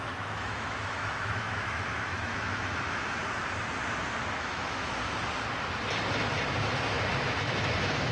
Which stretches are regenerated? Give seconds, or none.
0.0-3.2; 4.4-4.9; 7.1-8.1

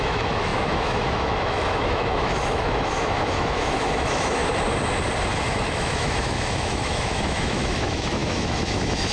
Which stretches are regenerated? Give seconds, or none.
0.0-4.4; 5.4-9.1

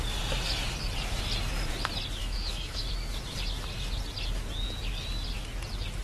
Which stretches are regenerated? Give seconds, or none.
2.2-2.9

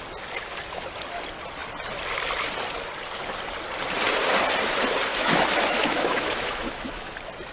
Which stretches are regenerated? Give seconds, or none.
5.1-7.1

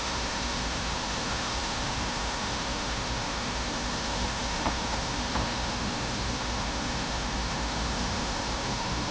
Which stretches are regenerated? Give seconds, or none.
0.0-9.1

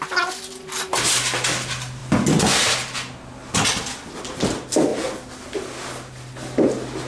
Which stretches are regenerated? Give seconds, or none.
none